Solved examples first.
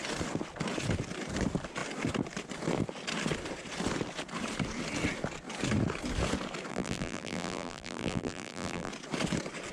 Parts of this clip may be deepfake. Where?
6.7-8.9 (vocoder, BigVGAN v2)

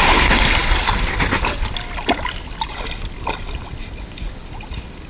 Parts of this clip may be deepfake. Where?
none